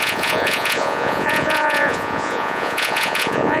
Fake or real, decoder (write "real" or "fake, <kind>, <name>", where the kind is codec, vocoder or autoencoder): fake, vocoder, Vocos